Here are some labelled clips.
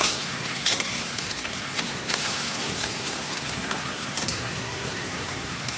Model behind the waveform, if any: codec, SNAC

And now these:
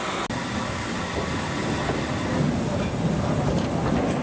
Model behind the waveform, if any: none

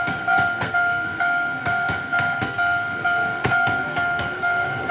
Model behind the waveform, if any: codec, SNAC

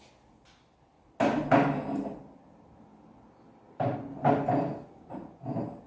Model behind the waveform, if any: none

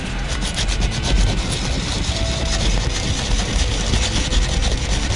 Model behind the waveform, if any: none